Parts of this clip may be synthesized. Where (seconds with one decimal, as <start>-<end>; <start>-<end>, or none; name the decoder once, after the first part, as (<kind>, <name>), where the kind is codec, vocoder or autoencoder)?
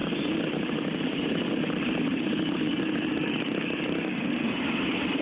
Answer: 3.1-4.4 (codec, DAC)